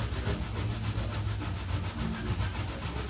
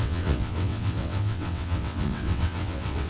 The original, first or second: first